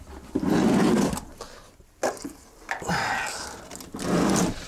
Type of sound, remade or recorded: recorded